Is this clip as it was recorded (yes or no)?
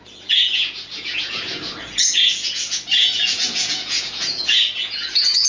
no